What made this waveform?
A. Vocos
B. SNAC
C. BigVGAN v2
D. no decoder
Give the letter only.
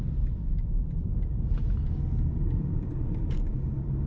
C